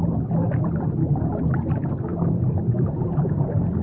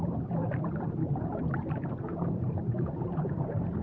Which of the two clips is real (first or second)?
first